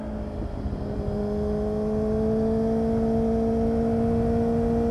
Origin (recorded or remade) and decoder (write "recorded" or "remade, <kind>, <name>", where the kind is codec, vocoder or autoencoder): recorded